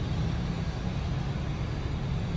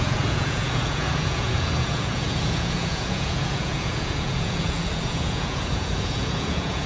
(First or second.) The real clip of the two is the first